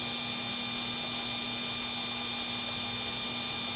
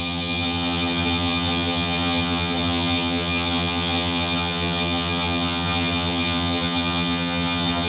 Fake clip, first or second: second